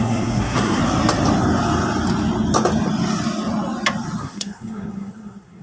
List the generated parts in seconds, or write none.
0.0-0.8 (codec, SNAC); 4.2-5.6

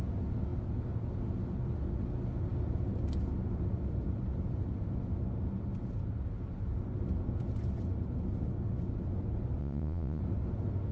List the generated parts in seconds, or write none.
9.6-10.2 (vocoder, Vocos)